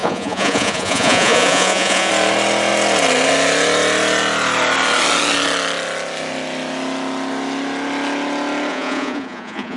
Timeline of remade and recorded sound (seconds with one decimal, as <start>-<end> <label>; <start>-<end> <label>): 0.0-2.1 remade; 2.1-8.7 recorded; 8.7-9.8 remade